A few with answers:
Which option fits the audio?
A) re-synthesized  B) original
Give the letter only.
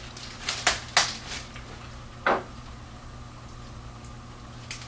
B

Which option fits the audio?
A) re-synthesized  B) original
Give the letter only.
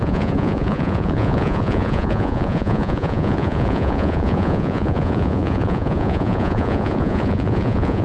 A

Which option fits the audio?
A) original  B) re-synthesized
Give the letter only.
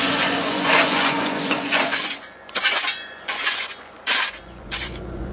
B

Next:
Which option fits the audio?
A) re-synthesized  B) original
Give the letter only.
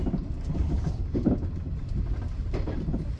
B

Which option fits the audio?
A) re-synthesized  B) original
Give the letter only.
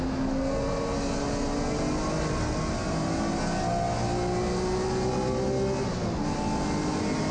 B